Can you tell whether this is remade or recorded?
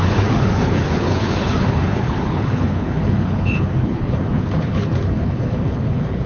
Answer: remade